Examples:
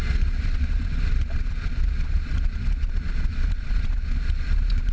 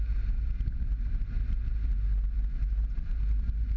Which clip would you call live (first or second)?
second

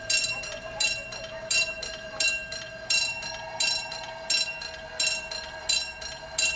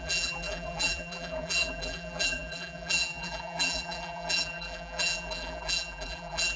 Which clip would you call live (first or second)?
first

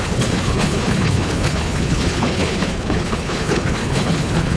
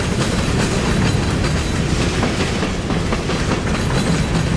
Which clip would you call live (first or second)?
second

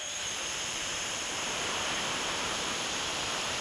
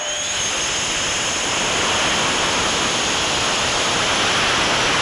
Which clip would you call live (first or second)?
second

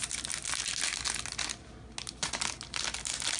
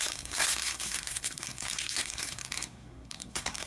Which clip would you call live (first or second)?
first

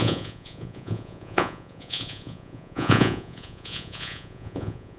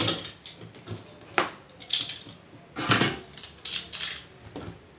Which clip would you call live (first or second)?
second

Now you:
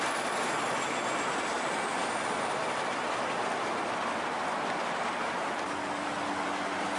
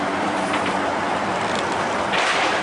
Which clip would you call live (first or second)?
first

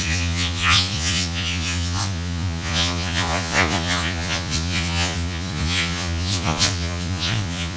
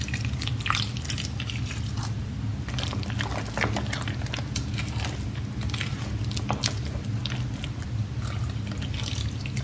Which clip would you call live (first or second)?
second